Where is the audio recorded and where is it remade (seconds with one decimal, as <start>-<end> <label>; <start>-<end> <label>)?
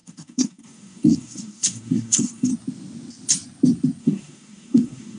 0.0-2.5 remade; 2.5-4.0 recorded; 4.0-5.2 remade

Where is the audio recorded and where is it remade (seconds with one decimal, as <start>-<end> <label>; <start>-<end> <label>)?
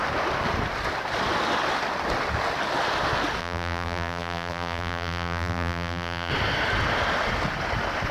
0.0-3.4 recorded; 3.4-6.3 remade; 6.3-8.1 recorded